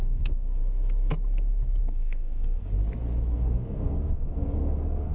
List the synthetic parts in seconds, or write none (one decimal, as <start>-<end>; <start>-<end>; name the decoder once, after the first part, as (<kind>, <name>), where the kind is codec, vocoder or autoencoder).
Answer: 0.0-0.6 (codec, SNAC); 1.8-2.7; 3.3-5.1